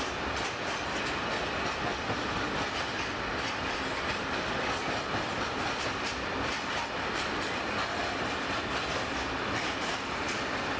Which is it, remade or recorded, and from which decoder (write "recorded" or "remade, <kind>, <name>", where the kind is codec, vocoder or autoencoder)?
recorded